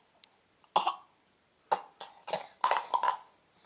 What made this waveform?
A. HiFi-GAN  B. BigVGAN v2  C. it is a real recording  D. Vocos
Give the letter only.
C